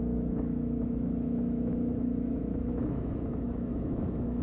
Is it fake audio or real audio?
fake